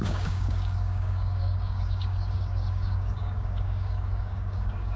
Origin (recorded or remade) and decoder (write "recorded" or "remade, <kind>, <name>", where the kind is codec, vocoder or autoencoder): remade, codec, DAC